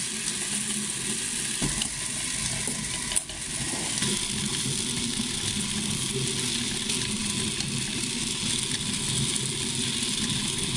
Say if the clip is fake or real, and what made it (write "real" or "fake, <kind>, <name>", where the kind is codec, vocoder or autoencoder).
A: real